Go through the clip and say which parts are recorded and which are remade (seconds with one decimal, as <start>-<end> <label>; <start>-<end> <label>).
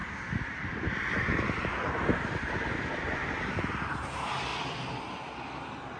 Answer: 0.0-3.6 remade; 3.6-4.5 recorded; 4.5-6.0 remade